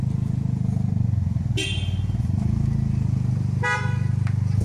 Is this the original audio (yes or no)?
yes